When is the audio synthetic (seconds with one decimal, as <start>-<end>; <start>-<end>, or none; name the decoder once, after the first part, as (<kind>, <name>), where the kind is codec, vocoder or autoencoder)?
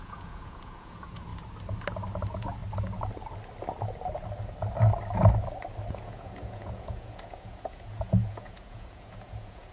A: 0.0-1.3 (vocoder, Vocos); 2.1-2.6; 5.9-9.7